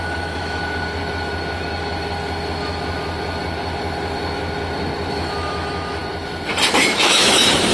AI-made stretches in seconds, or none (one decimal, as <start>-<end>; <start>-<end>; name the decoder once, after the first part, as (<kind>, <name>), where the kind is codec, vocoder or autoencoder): 0.0-0.6 (autoencoder, DAC-VAE); 5.1-6.0; 6.7-7.7

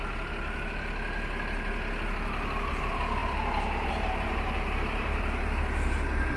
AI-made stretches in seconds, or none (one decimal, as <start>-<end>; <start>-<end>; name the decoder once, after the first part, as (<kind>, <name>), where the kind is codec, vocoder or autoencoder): 2.8-3.2 (vocoder, BigVGAN v2); 3.9-6.4

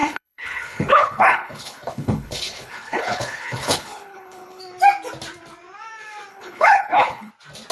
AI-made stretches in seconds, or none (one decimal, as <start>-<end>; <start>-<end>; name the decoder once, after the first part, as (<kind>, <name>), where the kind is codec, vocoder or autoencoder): 0.0-4.6 (codec, HILCodec); 6.3-7.3

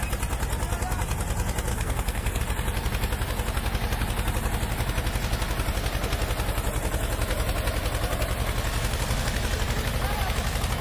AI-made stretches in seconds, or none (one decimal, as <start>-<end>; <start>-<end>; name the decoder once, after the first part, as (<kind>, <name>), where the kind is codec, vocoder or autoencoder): 1.7-2.4 (codec, SNAC)